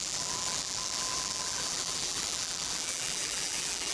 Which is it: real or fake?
fake